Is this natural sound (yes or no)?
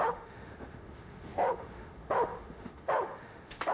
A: no